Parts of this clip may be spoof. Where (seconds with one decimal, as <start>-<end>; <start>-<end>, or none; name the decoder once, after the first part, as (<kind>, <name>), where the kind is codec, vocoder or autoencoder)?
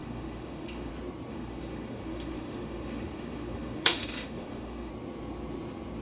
0.0-0.9 (autoencoder, DAC-VAE); 1.3-4.9